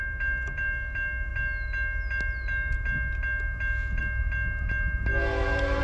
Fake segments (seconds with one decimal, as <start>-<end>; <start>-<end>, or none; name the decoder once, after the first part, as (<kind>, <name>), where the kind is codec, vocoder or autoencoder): none